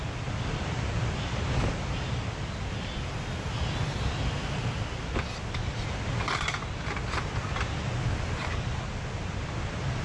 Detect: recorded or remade recorded